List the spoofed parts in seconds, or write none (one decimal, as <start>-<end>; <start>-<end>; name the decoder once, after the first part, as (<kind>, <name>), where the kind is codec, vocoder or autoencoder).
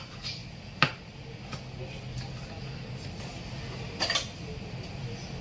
none